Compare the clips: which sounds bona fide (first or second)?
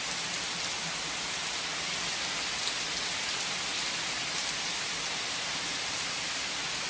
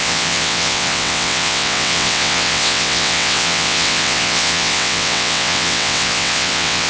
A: first